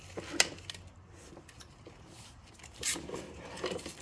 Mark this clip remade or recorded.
recorded